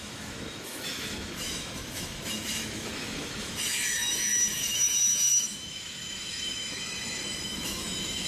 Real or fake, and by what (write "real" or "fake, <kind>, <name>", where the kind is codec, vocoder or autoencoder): fake, autoencoder, DAC-VAE